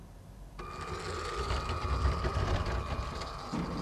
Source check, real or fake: real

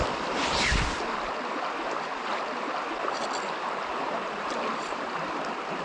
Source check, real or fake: real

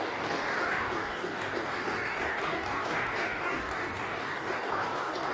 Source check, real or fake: fake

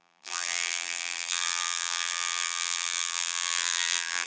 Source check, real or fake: fake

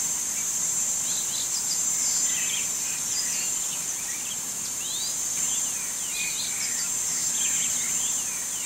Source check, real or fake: real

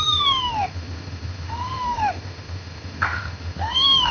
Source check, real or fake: fake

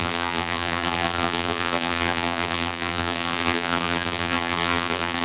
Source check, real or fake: fake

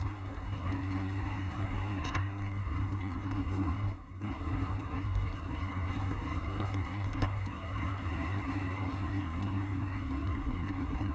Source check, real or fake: fake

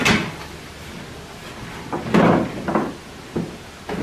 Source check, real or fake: real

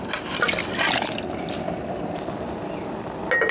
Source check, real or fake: real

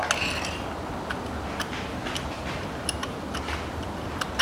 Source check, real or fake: real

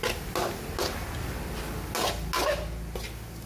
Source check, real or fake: real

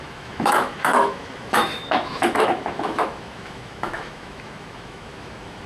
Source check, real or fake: fake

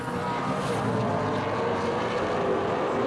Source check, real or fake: real